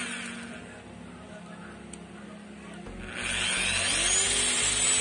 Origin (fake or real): real